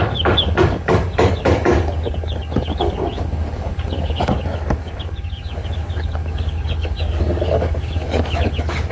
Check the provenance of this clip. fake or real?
fake